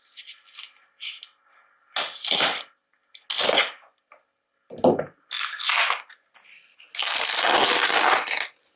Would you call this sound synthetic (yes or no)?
no